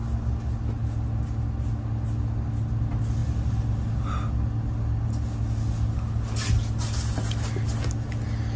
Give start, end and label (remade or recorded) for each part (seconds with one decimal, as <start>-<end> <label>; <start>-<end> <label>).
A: 0.0-8.6 recorded